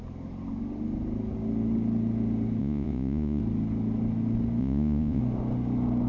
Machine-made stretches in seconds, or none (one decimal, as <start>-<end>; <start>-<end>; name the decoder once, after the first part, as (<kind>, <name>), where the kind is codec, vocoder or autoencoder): 2.6-3.4 (vocoder, Vocos); 4.6-5.2